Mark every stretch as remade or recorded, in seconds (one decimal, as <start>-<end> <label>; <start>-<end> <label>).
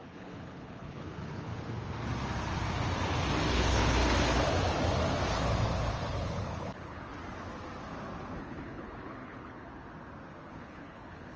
0.0-1.5 remade; 1.5-3.5 recorded; 3.5-4.0 remade; 4.0-5.9 recorded; 5.9-7.1 remade; 7.1-8.4 recorded; 8.4-9.7 remade; 9.7-10.3 recorded; 10.3-11.4 remade